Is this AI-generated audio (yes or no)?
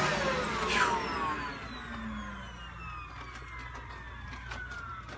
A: no